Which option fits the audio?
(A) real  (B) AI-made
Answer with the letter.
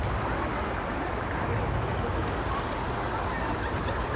A